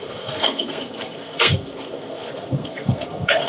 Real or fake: fake